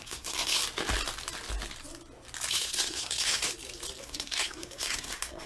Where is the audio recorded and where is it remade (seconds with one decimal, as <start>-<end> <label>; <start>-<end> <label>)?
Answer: 0.0-0.6 remade; 0.6-2.5 recorded; 2.5-3.5 remade; 3.5-4.0 recorded; 4.0-5.5 remade